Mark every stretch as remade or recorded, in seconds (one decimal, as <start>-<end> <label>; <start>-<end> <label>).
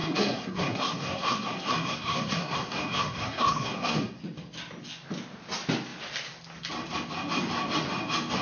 0.0-4.2 remade; 4.2-8.4 recorded